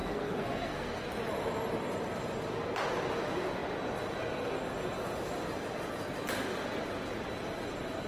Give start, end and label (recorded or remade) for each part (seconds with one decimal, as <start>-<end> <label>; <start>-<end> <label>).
0.0-1.1 remade; 1.1-8.1 recorded